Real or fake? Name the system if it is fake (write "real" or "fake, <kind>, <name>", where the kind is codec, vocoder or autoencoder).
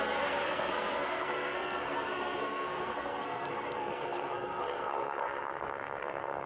fake, codec, SNAC